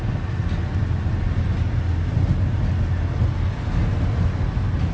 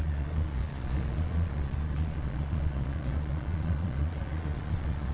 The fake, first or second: second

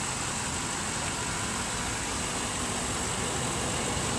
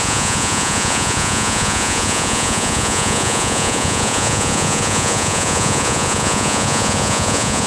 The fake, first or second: second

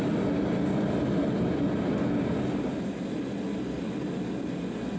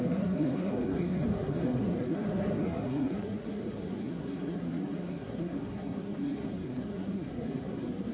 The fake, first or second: second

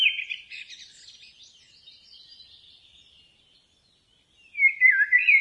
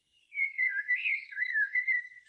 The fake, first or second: second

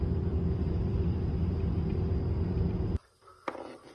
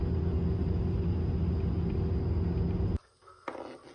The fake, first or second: first